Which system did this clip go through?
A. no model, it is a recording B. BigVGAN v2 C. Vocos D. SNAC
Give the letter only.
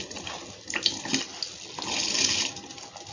A